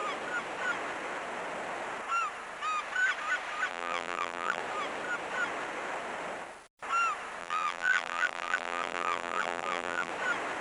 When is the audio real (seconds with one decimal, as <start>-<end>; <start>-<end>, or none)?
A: 0.0-3.7; 4.6-7.4; 10.1-10.6